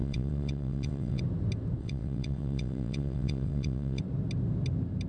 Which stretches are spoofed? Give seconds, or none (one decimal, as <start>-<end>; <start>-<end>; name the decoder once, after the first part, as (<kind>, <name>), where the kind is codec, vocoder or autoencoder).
0.0-1.2 (vocoder, WaveNeXt); 1.8-4.0